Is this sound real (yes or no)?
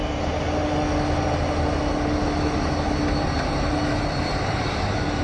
yes